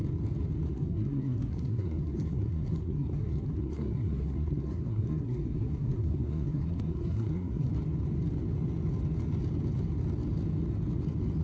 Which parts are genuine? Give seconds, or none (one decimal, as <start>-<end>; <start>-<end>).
0.0-0.7; 7.7-11.4